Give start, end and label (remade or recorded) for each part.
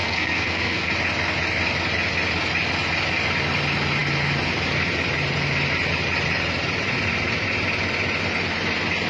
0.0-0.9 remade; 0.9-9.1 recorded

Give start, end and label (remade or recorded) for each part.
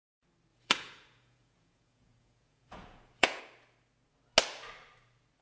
0.0-0.5 recorded; 0.5-3.4 remade; 3.4-5.4 recorded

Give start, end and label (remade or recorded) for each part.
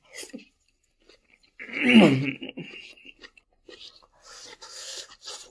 0.0-4.5 recorded; 4.5-5.1 remade; 5.1-5.5 recorded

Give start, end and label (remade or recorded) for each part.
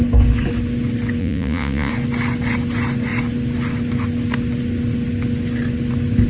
0.0-1.2 recorded; 1.2-1.9 remade; 1.9-6.3 recorded